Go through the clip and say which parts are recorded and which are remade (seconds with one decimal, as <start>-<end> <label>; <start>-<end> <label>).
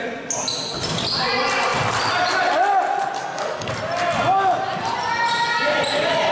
0.0-3.2 recorded; 3.2-3.7 remade; 3.7-6.3 recorded